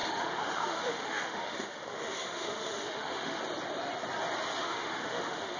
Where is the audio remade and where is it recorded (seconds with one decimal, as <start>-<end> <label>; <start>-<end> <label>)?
0.0-3.4 remade; 3.4-4.6 recorded; 4.6-5.6 remade